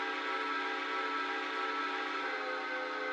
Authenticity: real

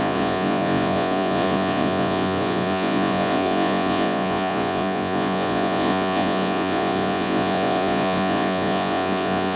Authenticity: fake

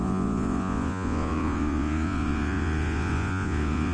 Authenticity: fake